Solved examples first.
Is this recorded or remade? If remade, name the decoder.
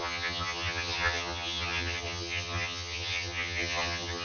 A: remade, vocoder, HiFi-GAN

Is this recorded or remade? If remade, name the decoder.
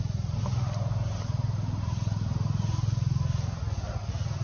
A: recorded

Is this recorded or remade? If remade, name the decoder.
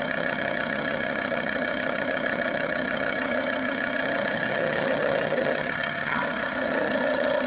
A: remade, vocoder, HiFi-GAN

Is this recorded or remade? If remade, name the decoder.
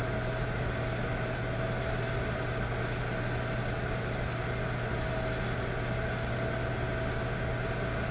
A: recorded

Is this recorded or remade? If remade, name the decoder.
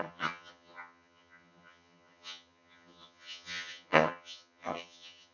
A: remade, vocoder, HiFi-GAN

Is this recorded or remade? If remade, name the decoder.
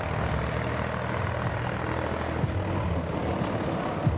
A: recorded